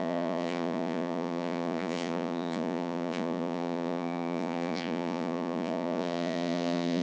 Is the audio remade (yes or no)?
yes